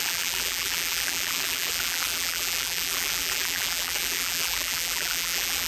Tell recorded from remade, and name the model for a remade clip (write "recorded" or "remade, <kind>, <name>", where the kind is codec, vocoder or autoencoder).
remade, vocoder, BigVGAN v2